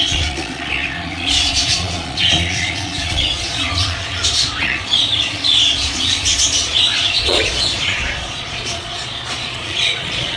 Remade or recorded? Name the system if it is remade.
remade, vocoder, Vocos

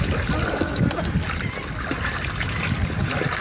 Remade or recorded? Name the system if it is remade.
recorded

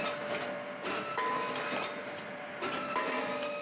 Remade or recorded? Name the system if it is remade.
recorded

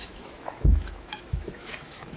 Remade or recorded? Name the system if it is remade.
remade, autoencoder, DAC-VAE